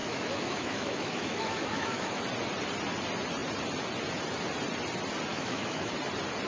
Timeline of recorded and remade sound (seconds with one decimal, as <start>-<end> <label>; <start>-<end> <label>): 0.0-2.2 remade; 2.2-5.3 recorded; 5.3-5.9 remade; 5.9-6.5 recorded